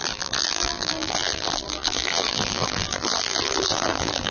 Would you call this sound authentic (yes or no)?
no